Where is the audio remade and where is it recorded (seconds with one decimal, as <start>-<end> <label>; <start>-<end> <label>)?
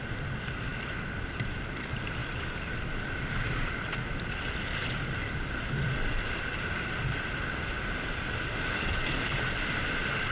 0.0-10.3 recorded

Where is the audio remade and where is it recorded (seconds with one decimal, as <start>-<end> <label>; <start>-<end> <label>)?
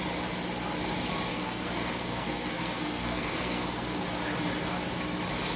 0.0-1.3 recorded; 1.3-4.0 remade; 4.0-5.6 recorded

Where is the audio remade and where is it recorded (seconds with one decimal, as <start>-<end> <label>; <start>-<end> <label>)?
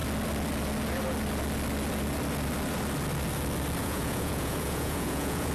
0.0-3.8 recorded; 3.8-5.5 remade